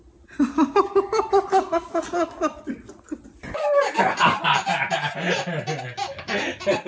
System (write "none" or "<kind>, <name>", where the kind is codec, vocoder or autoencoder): none